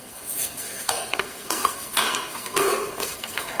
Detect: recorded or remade remade